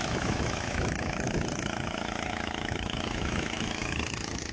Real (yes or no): no